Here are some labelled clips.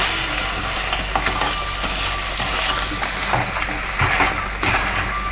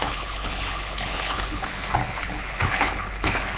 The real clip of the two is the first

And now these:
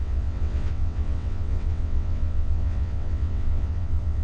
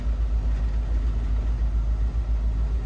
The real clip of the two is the second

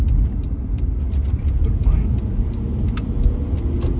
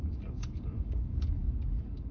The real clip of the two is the first